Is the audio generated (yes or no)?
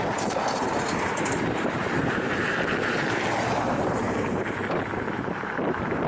yes